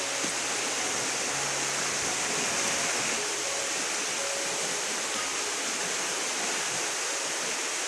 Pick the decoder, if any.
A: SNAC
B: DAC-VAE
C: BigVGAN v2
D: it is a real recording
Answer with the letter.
D